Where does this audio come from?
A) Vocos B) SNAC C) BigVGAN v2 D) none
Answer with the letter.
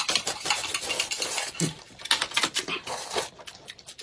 D